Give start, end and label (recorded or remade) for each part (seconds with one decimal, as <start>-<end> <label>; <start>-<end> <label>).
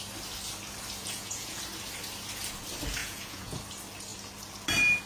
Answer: 0.0-1.0 recorded; 1.0-1.6 remade; 1.6-3.0 recorded; 3.0-3.6 remade; 3.6-5.1 recorded